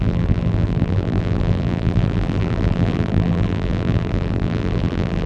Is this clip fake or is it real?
fake